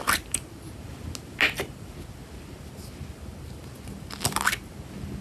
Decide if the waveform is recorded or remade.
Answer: recorded